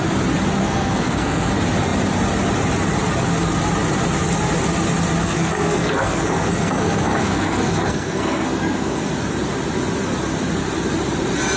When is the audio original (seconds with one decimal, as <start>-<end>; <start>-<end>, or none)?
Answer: 0.0-0.6; 1.5-5.2; 9.1-11.6